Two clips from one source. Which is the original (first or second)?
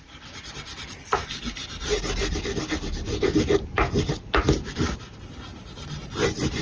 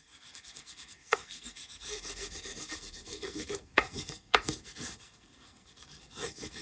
first